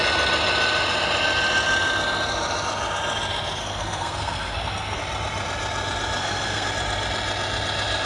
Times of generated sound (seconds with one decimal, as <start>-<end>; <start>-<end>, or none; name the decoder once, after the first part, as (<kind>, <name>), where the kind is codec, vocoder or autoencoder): 3.6-5.0 (codec, SNAC); 6.2-6.7